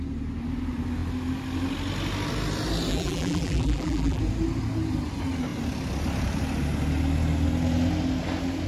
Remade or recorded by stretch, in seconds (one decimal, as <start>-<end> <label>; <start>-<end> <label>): 0.0-2.9 recorded; 2.9-4.2 remade; 4.2-8.7 recorded